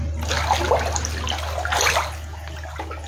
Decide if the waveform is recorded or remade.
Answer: recorded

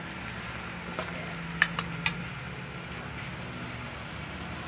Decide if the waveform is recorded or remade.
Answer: recorded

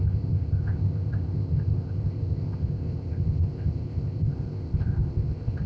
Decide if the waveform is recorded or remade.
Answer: remade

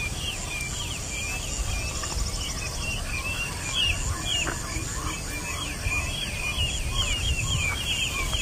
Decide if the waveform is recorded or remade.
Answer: recorded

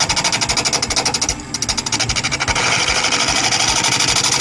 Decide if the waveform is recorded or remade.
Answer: recorded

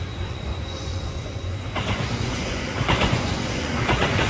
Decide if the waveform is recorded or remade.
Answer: remade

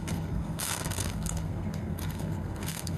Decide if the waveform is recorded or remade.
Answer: remade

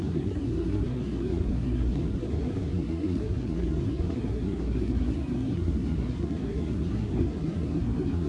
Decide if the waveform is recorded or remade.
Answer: remade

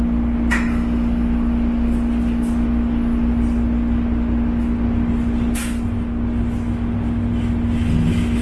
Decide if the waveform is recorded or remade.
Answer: recorded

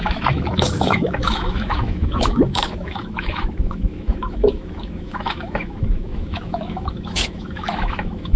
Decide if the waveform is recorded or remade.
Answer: remade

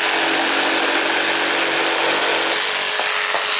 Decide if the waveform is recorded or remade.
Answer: recorded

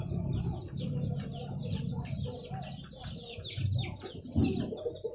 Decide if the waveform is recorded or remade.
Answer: recorded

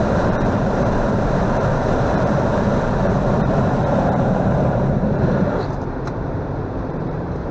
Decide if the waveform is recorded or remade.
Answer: remade